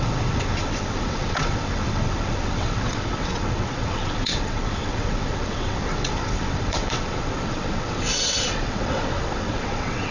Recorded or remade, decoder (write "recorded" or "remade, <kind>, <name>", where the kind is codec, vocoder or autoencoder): remade, vocoder, WaveNeXt